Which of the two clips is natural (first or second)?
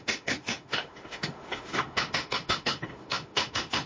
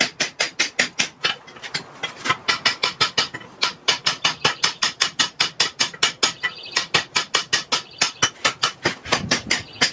second